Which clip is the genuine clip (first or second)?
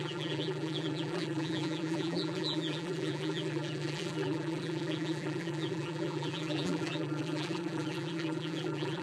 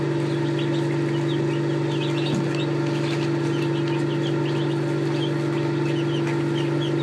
second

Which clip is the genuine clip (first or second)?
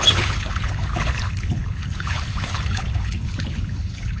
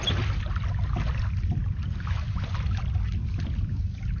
second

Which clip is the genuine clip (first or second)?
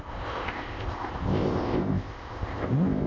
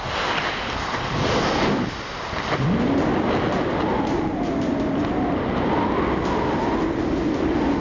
second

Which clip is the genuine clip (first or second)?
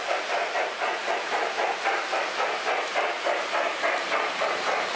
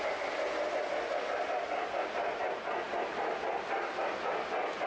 second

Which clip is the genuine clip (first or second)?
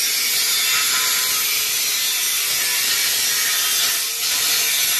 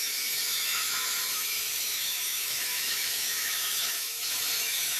first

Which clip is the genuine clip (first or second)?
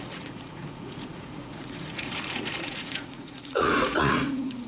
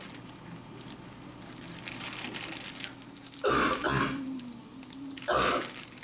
second